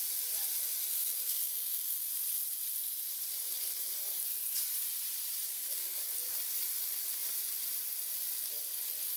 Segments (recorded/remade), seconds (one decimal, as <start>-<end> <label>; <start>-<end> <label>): 0.0-0.9 recorded; 0.9-2.1 remade; 2.1-5.5 recorded; 5.5-6.0 remade; 6.0-9.2 recorded